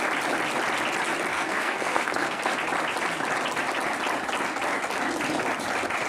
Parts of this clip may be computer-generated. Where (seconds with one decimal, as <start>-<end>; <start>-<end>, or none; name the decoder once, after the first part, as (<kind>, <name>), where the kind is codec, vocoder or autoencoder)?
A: 1.3-2.5 (codec, SNAC)